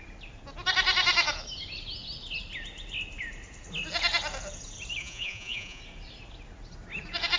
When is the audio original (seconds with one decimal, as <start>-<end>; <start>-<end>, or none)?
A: 0.0-5.0; 5.8-7.4